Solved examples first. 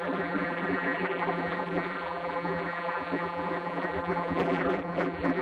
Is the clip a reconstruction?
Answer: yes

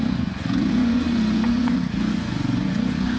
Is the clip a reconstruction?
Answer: yes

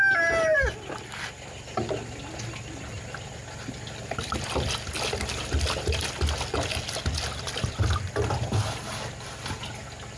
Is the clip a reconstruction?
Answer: no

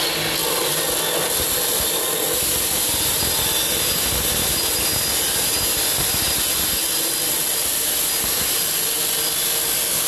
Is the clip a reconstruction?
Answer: no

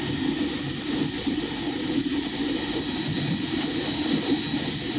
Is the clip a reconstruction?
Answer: no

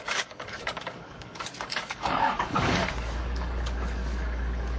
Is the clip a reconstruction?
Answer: yes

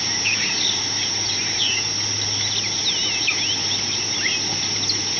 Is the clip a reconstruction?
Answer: no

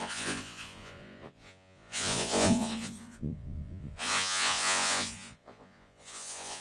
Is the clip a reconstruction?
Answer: yes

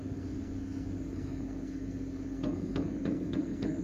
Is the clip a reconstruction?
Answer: yes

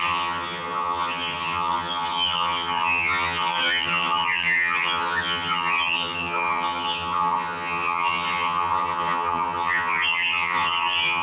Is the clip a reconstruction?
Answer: yes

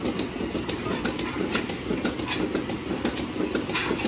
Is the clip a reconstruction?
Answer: no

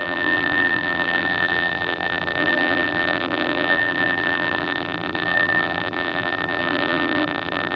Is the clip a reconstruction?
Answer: yes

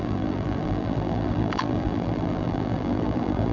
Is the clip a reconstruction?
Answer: yes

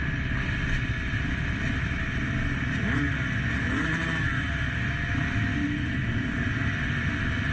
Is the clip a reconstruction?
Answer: no